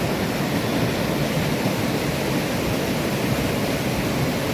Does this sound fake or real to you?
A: real